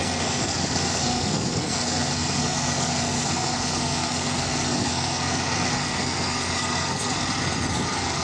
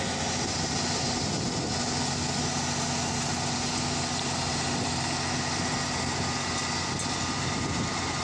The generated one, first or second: first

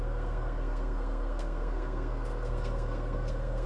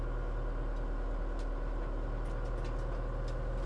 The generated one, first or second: first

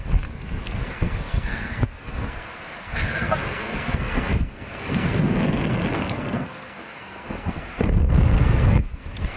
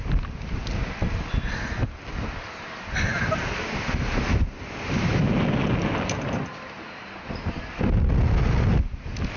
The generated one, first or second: first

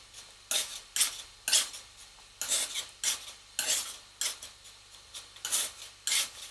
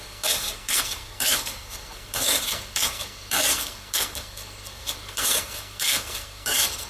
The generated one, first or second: second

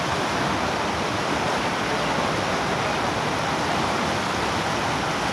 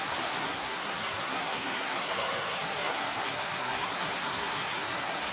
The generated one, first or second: second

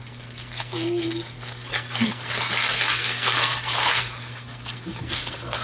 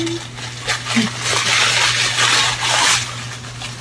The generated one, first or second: first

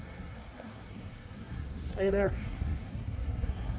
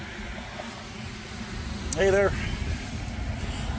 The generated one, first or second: first